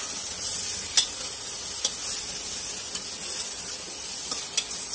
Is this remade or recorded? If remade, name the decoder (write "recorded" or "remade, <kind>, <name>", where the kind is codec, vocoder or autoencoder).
recorded